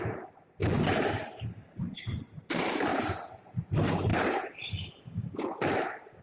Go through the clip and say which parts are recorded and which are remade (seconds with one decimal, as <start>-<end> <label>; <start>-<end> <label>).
0.0-0.6 remade; 0.6-1.1 recorded; 1.1-2.9 remade; 2.9-3.4 recorded; 3.4-4.1 remade; 4.1-6.2 recorded